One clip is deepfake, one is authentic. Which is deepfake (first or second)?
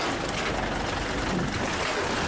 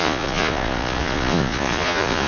second